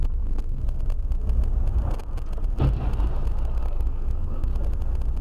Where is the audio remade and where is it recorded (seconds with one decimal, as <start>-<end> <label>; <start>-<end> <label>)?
0.0-0.6 remade; 0.6-3.6 recorded; 3.6-4.5 remade; 4.5-5.2 recorded